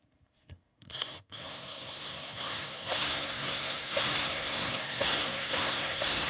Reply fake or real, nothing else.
fake